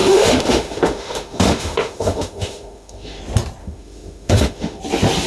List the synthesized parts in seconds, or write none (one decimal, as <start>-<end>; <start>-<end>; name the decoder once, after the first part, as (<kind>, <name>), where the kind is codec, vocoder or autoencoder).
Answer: 0.0-3.2 (autoencoder, DAC-VAE); 3.6-4.8